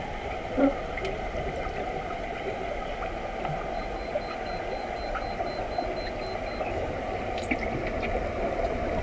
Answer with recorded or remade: recorded